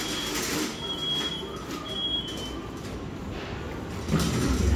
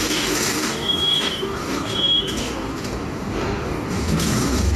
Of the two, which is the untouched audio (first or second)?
first